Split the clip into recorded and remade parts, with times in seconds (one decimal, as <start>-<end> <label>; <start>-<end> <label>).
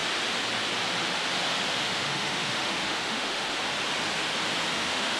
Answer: 0.0-1.7 recorded; 1.7-3.6 remade; 3.6-4.7 recorded; 4.7-5.2 remade